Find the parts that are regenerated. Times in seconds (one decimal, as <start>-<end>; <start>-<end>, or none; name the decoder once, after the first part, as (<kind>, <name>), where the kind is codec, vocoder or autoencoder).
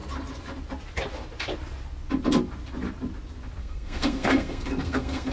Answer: 3.6-5.3 (codec, SNAC)